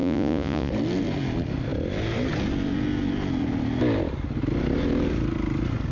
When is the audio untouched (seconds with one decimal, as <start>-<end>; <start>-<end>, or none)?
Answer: 0.7-5.9